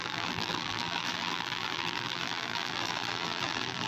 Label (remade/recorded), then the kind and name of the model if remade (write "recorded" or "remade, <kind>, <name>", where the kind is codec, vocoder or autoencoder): remade, vocoder, BigVGAN v2